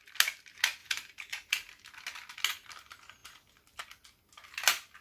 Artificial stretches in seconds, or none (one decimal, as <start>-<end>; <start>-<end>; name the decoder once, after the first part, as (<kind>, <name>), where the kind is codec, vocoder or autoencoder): 0.8-1.5 (vocoder, BigVGAN v2)